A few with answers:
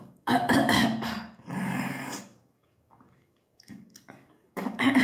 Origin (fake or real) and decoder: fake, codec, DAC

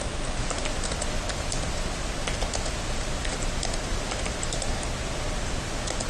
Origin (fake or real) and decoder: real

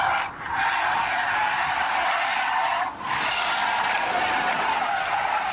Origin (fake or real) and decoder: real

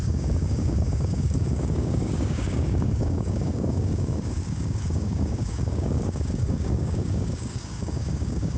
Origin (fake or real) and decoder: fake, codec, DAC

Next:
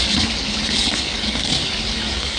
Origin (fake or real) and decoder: fake, codec, DAC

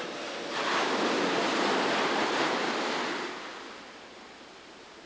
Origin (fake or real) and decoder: real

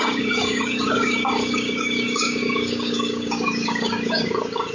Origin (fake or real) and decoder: fake, codec, DAC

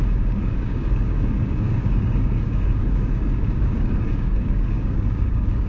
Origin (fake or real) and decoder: fake, codec, DAC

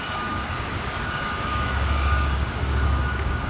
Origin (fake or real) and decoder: fake, codec, DAC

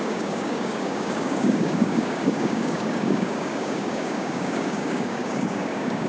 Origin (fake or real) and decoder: fake, codec, DAC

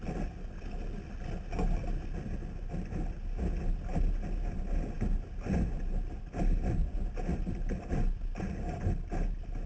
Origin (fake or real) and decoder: real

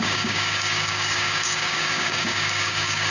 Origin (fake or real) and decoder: fake, codec, DAC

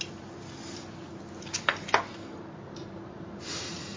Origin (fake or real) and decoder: real